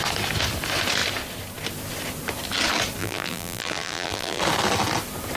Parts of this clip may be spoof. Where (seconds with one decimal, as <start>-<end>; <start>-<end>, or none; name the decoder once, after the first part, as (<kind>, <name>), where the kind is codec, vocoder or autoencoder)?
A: 3.0-4.4 (vocoder, BigVGAN v2)